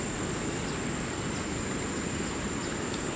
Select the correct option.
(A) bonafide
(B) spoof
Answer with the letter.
A